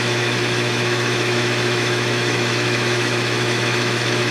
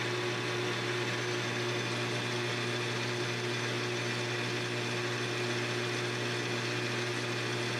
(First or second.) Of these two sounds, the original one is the second